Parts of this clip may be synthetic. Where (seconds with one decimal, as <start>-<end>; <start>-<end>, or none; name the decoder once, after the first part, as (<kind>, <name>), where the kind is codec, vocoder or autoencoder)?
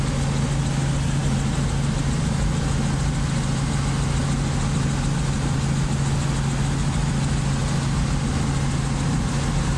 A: none